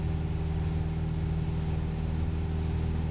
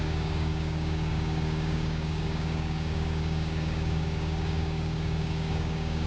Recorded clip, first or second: first